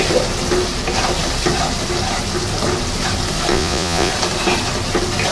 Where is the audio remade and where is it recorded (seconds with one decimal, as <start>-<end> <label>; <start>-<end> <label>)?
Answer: 0.0-3.5 recorded; 3.5-4.1 remade; 4.1-5.3 recorded